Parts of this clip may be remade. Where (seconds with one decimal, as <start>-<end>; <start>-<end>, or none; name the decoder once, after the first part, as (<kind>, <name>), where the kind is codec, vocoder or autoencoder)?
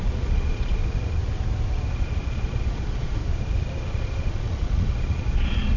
0.0-0.8 (vocoder, Vocos); 1.9-3.2; 3.8-5.8